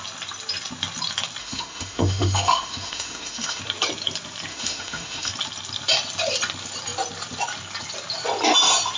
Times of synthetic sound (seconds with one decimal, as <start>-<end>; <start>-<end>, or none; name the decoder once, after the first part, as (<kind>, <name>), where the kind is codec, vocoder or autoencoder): 1.4-3.6 (autoencoder, DAC-VAE); 4.5-5.3